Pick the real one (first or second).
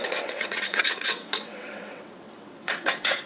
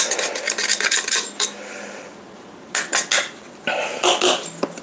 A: second